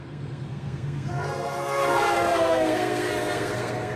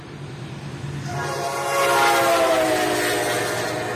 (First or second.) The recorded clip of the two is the second